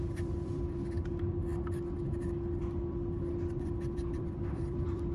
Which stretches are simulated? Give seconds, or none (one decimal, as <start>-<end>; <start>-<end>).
0.0-1.5; 3.6-5.1